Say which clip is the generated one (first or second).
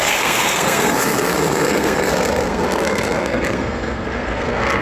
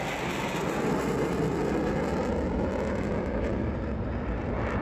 first